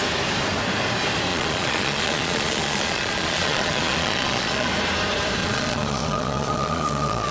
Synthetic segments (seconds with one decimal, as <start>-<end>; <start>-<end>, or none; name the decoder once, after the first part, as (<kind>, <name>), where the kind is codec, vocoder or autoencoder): 1.3-4.7 (vocoder, Vocos); 5.4-7.3